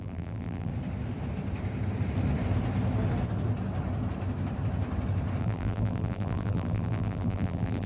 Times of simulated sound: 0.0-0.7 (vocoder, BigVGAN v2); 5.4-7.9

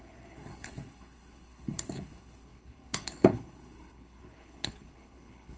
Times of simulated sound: 0.0-5.6 (codec, HILCodec)

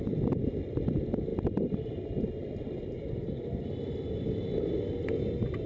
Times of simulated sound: none

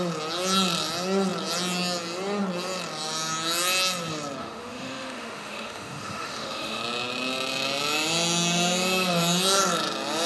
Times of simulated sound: 4.4-6.8 (autoencoder, DAC-VAE)

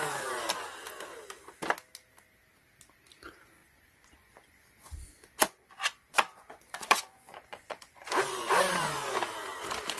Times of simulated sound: 3.6-8.8 (vocoder, Vocos)